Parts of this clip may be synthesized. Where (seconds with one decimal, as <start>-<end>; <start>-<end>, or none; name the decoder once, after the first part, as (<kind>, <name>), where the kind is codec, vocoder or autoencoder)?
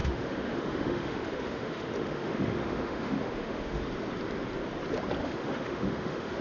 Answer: 0.0-3.8 (autoencoder, DAC-VAE); 5.2-6.4